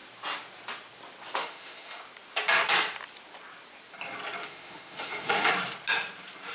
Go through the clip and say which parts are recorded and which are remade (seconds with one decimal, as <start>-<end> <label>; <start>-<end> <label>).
0.0-1.4 recorded; 1.4-2.0 remade; 2.0-4.4 recorded; 4.4-5.5 remade; 5.5-6.5 recorded